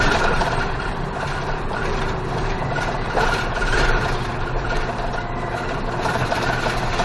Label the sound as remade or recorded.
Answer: remade